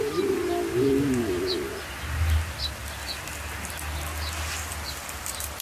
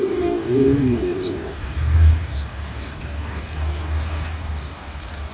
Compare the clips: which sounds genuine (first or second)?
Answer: first